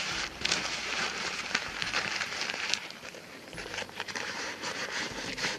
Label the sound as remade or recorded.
remade